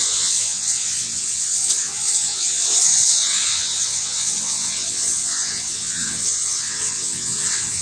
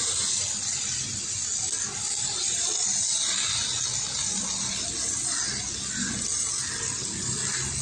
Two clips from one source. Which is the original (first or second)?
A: second